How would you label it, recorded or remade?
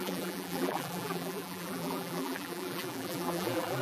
remade